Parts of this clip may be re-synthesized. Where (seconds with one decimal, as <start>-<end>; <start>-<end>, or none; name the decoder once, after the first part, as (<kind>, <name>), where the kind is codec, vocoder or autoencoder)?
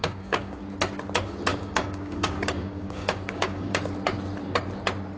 0.0-0.6 (codec, DAC); 1.5-3.8